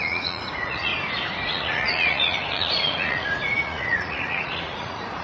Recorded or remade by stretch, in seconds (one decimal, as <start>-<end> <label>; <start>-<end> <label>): 0.0-0.9 remade; 0.9-1.5 recorded; 1.5-5.2 remade